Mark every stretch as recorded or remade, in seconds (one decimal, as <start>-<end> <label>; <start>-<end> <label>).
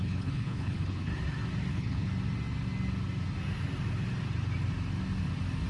0.0-1.1 remade; 1.1-1.7 recorded; 1.7-2.1 remade; 2.1-5.7 recorded